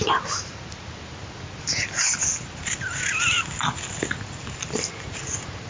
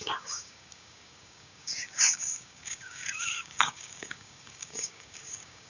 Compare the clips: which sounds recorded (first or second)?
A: first